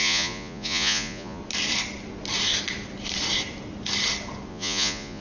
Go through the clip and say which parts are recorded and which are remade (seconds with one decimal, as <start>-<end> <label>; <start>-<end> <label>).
0.0-1.4 remade; 1.4-4.5 recorded; 4.5-5.2 remade